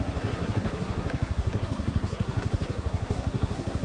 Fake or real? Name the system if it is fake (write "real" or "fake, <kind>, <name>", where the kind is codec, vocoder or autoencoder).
fake, codec, SNAC